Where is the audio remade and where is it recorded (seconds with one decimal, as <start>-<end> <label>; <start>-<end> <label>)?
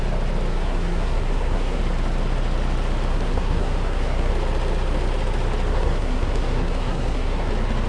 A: 0.0-0.5 recorded; 0.5-1.8 remade; 1.8-3.1 recorded; 3.1-4.3 remade; 4.3-5.7 recorded; 5.7-7.5 remade; 7.5-7.9 recorded